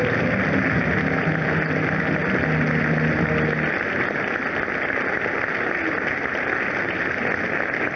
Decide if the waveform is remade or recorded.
recorded